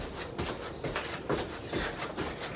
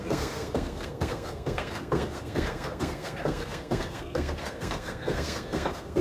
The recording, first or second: first